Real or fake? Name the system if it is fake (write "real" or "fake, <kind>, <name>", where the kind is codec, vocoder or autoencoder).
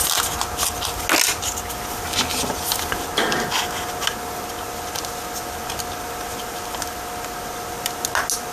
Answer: real